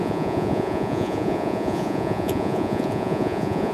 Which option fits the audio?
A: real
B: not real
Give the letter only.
B